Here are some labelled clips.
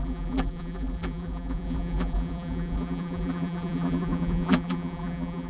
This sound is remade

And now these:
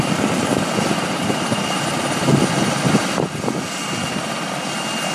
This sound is recorded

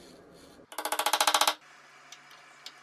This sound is recorded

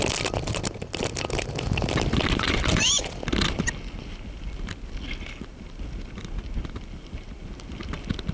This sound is recorded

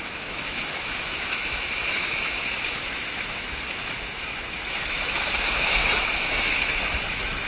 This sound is remade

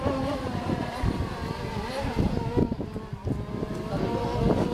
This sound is recorded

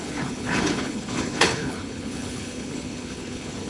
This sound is remade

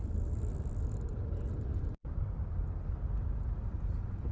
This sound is recorded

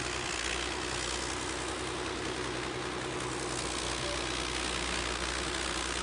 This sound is recorded